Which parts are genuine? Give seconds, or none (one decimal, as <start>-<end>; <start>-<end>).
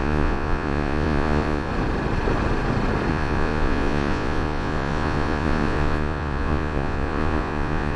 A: 1.7-3.1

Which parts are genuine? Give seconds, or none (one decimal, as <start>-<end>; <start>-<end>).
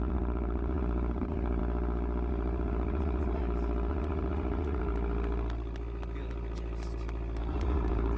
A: 1.6-2.3; 3.4-3.9; 4.9-7.4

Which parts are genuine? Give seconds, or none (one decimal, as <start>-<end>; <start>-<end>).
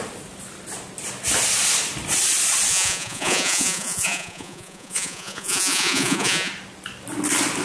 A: 0.0-2.7; 6.5-7.6